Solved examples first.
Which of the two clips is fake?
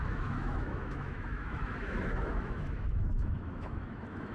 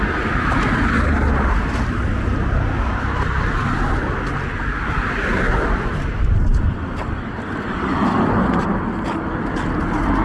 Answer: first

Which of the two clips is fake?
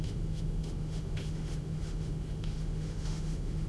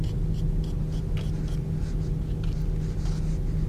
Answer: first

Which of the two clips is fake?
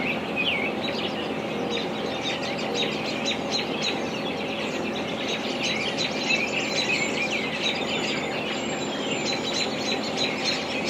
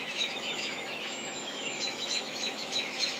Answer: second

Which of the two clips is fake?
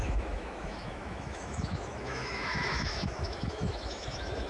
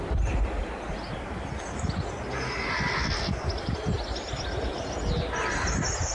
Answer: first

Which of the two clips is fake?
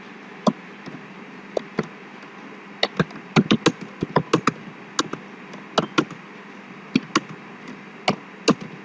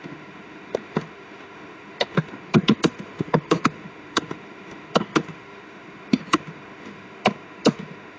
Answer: second